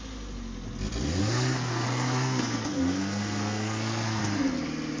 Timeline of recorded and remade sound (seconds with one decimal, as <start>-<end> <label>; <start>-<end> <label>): 0.0-1.2 recorded; 1.2-4.2 remade; 4.2-5.0 recorded